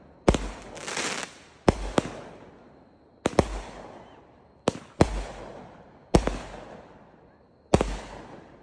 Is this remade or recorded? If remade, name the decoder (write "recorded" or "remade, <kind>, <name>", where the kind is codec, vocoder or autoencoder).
recorded